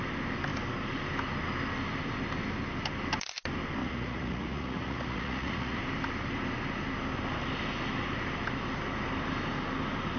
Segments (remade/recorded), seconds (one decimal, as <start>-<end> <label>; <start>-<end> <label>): 0.0-3.8 recorded; 3.8-5.8 remade; 5.8-10.2 recorded

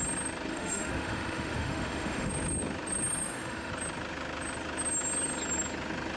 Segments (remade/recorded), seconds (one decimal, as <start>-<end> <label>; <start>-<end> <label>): 0.0-0.5 recorded; 0.5-2.3 remade; 2.3-3.2 recorded; 3.2-3.7 remade; 3.7-6.2 recorded

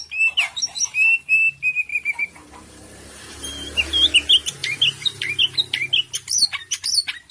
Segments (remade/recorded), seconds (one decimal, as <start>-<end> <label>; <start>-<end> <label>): 0.0-1.9 recorded; 1.9-3.5 remade; 3.5-4.6 recorded; 4.6-5.4 remade; 5.4-7.3 recorded